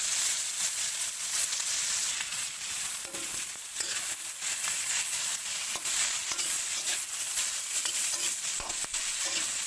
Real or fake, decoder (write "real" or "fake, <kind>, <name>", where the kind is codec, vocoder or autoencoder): fake, vocoder, Vocos